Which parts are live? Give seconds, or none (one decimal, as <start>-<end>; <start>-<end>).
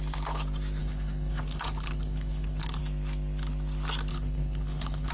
0.0-0.8; 2.8-4.1